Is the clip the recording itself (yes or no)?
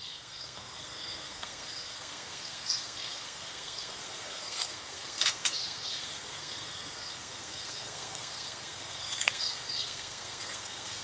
no